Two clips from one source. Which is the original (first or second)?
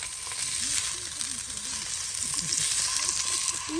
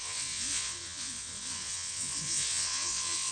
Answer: first